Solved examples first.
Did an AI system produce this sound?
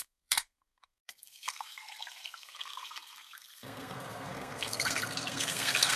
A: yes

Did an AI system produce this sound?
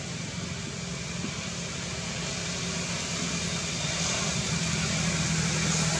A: no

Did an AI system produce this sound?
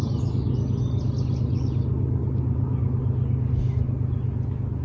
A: no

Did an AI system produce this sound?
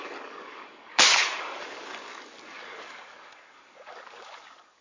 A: yes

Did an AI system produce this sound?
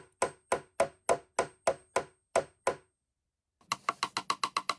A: no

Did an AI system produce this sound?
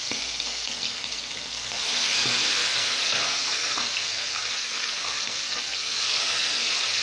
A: yes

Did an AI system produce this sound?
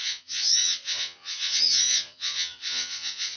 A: yes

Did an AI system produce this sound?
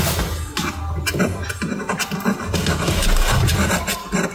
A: no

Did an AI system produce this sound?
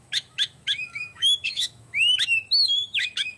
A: yes